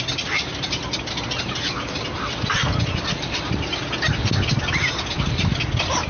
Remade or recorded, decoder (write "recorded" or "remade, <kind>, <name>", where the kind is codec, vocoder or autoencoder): recorded